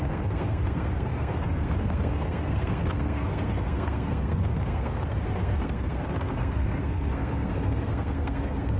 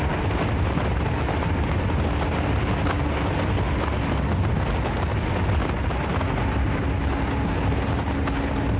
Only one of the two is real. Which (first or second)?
second